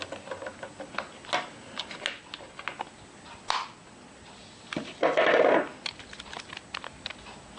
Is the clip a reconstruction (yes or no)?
no